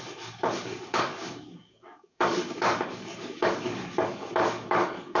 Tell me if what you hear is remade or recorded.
remade